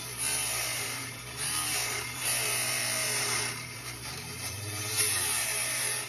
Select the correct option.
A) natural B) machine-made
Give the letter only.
B